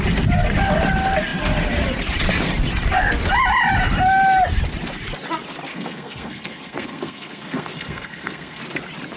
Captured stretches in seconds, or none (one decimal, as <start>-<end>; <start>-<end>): 0.0-5.7; 8.6-9.2